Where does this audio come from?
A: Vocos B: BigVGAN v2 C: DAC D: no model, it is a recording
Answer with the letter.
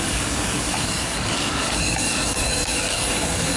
C